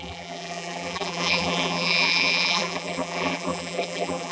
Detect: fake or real fake